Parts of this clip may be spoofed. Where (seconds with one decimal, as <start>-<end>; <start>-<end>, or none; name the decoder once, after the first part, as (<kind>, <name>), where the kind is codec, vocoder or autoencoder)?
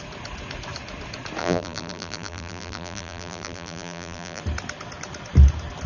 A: 1.4-4.4 (vocoder, BigVGAN v2)